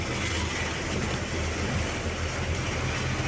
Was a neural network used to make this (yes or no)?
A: no